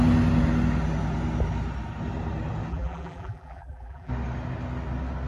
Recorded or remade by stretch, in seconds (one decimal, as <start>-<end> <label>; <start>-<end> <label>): 0.0-2.7 recorded; 2.7-4.1 remade; 4.1-5.3 recorded